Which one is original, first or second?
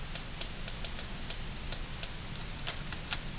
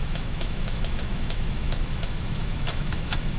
first